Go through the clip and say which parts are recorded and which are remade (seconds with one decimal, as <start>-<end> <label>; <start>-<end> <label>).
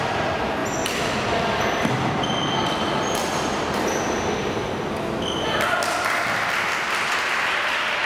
0.0-8.1 recorded